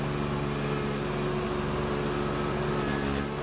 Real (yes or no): yes